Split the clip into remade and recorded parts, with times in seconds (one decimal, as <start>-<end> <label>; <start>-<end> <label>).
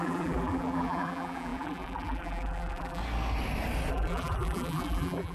0.0-3.0 remade; 3.0-3.9 recorded; 3.9-5.3 remade